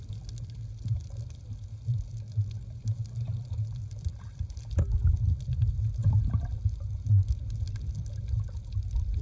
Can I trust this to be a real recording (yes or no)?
yes